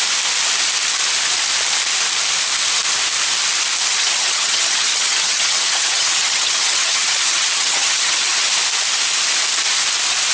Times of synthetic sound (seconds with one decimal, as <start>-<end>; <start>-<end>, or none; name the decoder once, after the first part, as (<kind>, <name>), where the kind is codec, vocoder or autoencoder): 3.9-8.5 (vocoder, HiFi-GAN)